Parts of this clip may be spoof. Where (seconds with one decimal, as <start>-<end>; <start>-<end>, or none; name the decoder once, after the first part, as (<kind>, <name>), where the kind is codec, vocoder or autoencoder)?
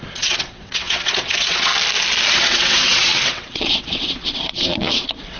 0.0-1.7 (vocoder, WaveNeXt); 2.3-5.4